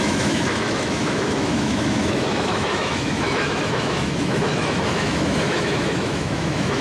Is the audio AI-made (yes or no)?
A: yes